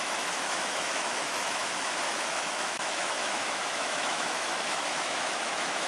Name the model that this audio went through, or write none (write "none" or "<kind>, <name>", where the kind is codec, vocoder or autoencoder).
autoencoder, DAC-VAE